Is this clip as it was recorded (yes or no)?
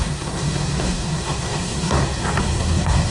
no